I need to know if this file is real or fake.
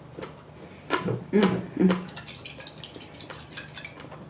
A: real